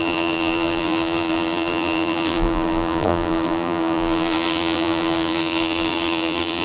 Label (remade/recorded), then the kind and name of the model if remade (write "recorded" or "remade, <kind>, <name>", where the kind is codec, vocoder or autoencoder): remade, vocoder, BigVGAN v2